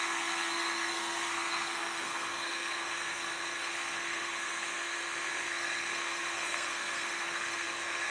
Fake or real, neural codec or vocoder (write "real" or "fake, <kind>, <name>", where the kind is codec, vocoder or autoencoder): fake, codec, SNAC